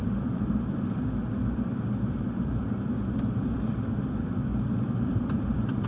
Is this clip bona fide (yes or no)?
no